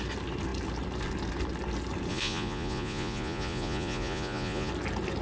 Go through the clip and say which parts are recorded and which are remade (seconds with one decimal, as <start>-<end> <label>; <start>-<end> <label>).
0.0-2.1 recorded; 2.1-4.7 remade; 4.7-5.2 recorded

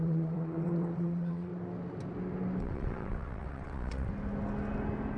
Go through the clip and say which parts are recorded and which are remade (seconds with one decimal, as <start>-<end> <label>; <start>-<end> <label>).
0.0-1.5 remade; 1.5-2.6 recorded; 2.6-4.1 remade; 4.1-5.2 recorded

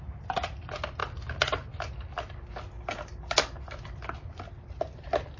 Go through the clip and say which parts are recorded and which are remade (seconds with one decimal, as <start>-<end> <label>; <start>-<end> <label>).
0.0-5.4 recorded

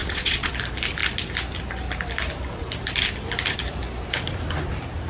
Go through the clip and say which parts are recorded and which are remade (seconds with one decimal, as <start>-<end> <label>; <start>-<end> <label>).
0.0-0.5 remade; 0.5-5.1 recorded

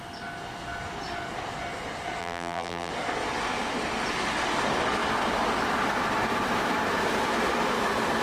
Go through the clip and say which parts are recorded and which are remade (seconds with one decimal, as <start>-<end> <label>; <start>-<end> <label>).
0.0-2.2 recorded; 2.2-2.9 remade; 2.9-8.2 recorded

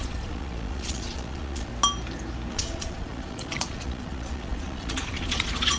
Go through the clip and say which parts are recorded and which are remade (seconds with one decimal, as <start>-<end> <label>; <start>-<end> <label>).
0.0-1.7 remade; 1.7-2.5 recorded; 2.5-5.8 remade